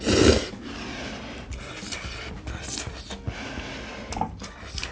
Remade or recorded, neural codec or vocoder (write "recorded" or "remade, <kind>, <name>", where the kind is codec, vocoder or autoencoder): recorded